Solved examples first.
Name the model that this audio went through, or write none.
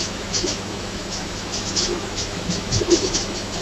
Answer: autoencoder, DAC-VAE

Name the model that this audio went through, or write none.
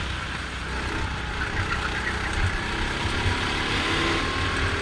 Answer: none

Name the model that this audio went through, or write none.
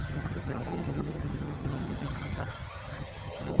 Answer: vocoder, HiFi-GAN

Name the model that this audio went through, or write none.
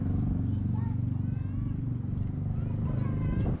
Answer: none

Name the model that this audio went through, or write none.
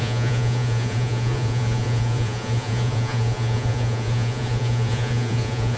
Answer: vocoder, Vocos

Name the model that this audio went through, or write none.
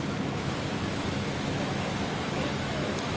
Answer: autoencoder, DAC-VAE